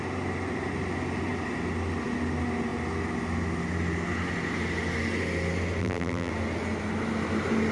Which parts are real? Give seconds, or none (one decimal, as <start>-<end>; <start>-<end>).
0.0-5.8; 6.3-7.7